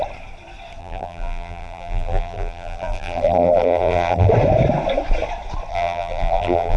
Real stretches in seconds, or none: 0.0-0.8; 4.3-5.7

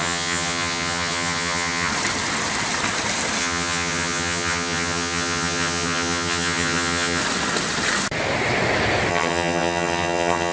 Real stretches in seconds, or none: 1.9-3.4; 7.2-9.1

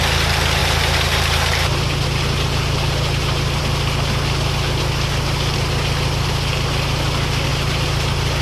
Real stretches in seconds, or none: 0.0-0.6; 3.6-7.5

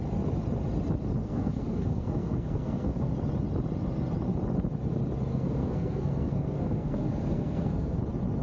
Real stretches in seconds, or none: 0.0-1.2; 3.1-5.3; 8.0-8.4

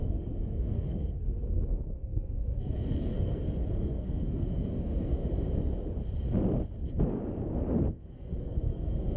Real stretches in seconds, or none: 5.2-7.9

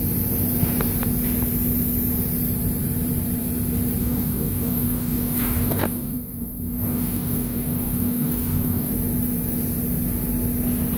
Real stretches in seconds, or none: 0.0-4.0; 8.9-11.0

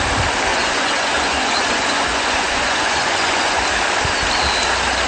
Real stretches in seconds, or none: 0.0-0.5; 3.6-5.1

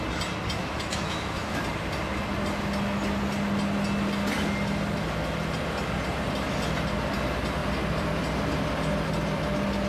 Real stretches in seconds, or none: 0.0-0.6; 1.6-9.9